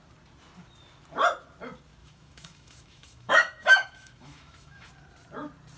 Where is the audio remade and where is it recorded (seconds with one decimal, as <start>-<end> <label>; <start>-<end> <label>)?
0.0-2.0 recorded; 2.0-4.9 remade; 4.9-5.8 recorded